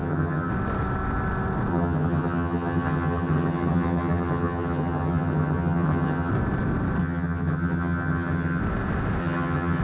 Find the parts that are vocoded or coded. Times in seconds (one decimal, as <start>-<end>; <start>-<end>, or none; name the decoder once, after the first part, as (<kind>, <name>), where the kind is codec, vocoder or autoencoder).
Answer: 0.0-0.5 (vocoder, HiFi-GAN); 1.7-6.3; 7.0-8.6; 9.2-9.8